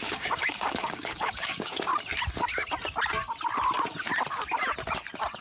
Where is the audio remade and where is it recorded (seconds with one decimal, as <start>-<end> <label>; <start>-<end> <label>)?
0.0-1.9 remade; 1.9-5.4 recorded